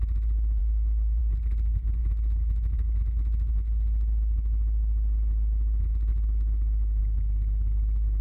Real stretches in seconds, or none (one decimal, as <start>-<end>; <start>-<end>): 0.0-0.6; 1.2-2.0; 3.0-8.2